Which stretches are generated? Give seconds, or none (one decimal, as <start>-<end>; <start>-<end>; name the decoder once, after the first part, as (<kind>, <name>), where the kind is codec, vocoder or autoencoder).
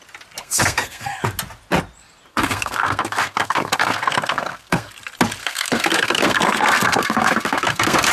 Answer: 0.4-1.2 (codec, SNAC); 2.3-4.9; 5.4-8.1